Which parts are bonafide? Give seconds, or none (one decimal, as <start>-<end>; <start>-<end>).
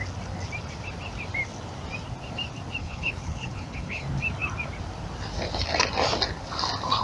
0.0-2.8; 4.0-7.0